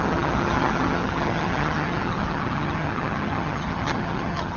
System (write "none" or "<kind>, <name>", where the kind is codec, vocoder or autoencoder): vocoder, HiFi-GAN